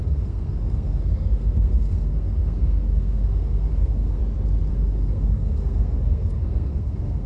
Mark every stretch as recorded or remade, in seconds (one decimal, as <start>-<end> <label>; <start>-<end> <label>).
0.0-4.2 remade; 4.2-4.7 recorded; 4.7-7.3 remade